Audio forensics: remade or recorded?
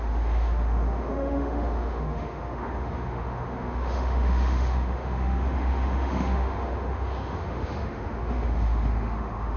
remade